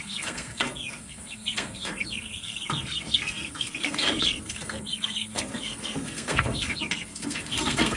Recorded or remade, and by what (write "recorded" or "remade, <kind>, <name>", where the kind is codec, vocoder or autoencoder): remade, codec, SNAC